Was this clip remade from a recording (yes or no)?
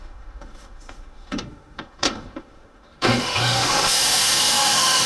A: yes